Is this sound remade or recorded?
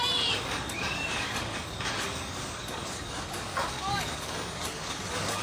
remade